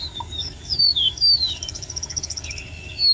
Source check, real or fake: fake